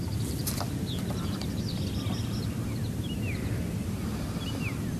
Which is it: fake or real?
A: real